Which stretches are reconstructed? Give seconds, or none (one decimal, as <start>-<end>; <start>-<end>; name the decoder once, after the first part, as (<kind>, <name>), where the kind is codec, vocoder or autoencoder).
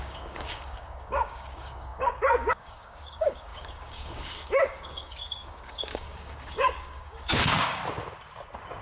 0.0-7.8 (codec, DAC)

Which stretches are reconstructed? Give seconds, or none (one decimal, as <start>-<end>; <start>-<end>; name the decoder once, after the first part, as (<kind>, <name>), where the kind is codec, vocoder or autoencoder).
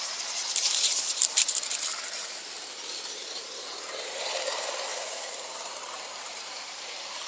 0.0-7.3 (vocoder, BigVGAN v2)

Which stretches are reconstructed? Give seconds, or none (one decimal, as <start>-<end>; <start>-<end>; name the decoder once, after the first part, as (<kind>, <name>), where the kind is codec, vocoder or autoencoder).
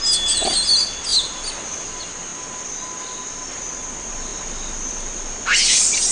none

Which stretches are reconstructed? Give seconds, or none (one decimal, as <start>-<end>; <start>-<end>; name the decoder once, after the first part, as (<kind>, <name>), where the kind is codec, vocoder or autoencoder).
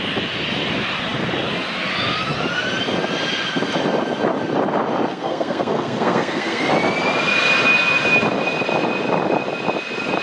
5.1-6.7 (codec, SNAC)